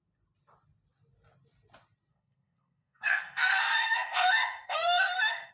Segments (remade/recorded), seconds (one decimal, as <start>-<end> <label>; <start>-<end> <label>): 0.0-2.1 recorded; 2.1-5.5 remade